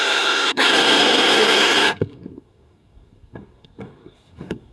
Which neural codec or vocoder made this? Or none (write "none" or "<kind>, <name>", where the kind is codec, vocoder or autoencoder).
codec, SNAC